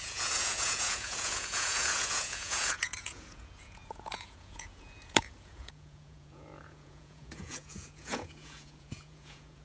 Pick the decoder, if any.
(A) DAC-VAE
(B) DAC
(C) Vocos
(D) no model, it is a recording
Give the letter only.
C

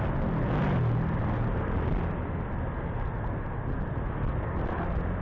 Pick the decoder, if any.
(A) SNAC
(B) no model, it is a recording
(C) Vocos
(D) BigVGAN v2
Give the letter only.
B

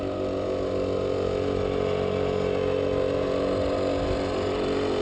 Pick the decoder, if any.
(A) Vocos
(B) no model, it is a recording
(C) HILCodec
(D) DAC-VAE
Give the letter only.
B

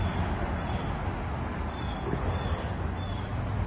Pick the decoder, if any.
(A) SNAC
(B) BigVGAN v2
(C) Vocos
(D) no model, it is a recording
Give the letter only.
D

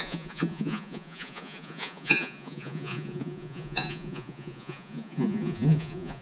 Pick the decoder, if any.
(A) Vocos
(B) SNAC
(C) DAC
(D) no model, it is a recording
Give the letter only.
A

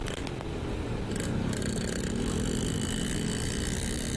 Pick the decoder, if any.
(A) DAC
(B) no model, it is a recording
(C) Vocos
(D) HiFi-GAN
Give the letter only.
B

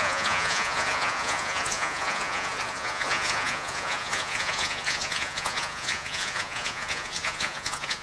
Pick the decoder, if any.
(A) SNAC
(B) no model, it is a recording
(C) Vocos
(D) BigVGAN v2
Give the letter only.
C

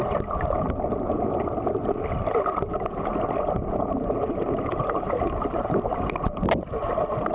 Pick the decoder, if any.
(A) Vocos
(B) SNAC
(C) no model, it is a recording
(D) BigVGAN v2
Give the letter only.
C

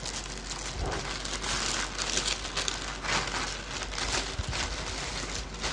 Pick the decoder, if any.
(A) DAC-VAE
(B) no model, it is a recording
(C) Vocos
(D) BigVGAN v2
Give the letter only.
B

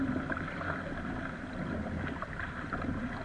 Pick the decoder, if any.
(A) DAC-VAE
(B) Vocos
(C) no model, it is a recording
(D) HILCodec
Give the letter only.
C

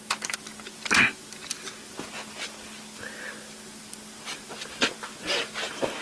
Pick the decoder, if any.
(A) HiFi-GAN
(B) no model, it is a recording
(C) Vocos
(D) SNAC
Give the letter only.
B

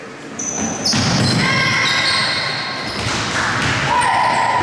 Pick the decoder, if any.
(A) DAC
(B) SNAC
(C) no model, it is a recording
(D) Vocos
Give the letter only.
C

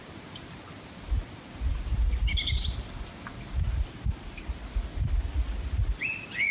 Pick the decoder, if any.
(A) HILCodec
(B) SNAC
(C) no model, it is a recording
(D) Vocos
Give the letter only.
C